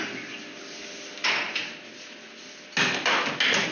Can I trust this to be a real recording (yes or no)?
yes